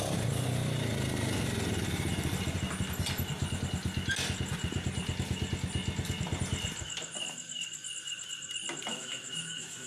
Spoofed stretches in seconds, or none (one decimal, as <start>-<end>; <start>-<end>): 8.9-9.9